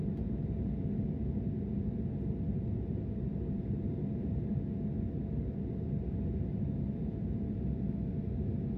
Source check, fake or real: real